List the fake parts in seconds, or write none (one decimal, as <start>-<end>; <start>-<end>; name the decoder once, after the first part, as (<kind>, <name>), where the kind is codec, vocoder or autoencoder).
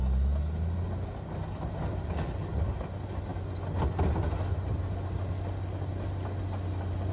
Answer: none